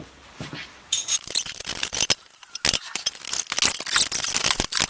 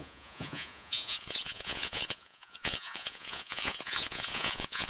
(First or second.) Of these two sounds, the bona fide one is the first